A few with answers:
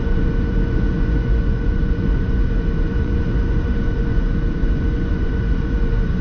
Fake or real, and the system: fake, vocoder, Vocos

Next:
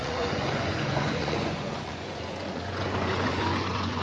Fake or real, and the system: fake, vocoder, Vocos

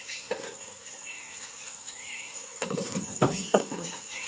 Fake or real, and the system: fake, codec, SNAC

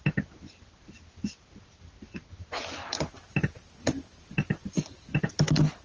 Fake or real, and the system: real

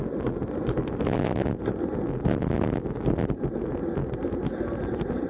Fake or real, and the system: real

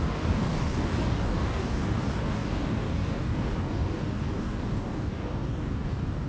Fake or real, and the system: fake, codec, DAC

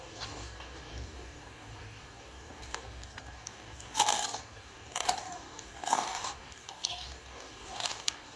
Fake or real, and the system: fake, codec, DAC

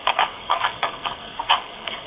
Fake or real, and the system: fake, codec, SNAC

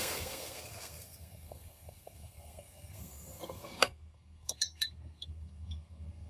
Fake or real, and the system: fake, codec, SNAC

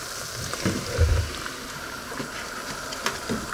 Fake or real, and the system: real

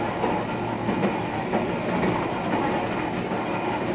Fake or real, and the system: real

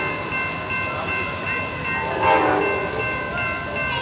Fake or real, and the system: real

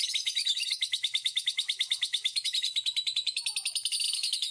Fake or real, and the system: fake, autoencoder, DAC-VAE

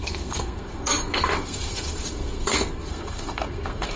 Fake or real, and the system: fake, codec, SNAC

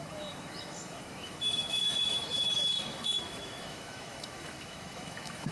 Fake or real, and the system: fake, autoencoder, DAC-VAE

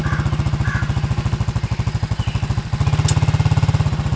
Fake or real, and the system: real